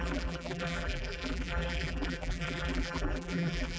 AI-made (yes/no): yes